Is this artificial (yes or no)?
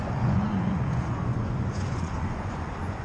yes